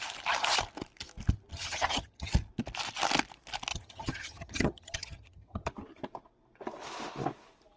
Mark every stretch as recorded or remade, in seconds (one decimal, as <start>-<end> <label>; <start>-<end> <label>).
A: 0.0-1.5 recorded; 1.5-2.3 remade; 2.3-3.7 recorded; 3.7-5.7 remade; 5.7-7.8 recorded